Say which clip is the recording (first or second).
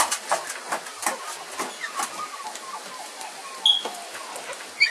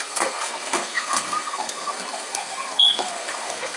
first